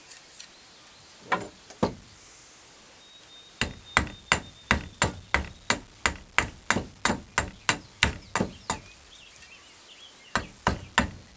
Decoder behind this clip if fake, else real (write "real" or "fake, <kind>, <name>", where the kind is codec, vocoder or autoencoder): real